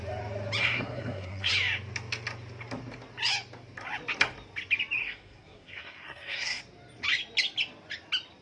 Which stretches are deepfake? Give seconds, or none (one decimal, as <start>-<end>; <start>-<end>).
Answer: 0.6-1.5; 5.0-6.6